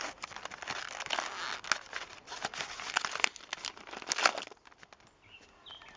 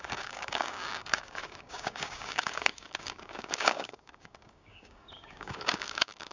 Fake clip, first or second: second